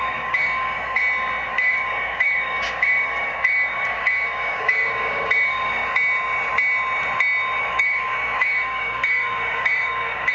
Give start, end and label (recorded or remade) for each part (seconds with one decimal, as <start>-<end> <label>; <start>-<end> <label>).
0.0-1.0 remade; 1.0-1.5 recorded; 1.5-5.8 remade; 5.8-7.6 recorded; 7.6-10.3 remade